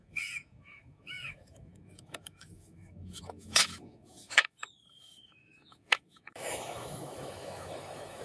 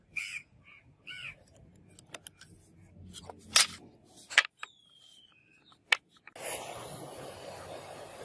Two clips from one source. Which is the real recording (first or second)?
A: second